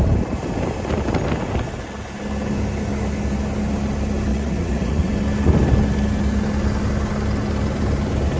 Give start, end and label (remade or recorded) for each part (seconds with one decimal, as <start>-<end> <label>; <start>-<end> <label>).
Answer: 0.0-4.3 recorded; 4.3-5.1 remade; 5.1-8.4 recorded